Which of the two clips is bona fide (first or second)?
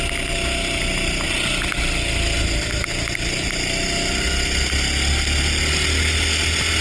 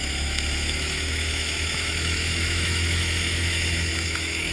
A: first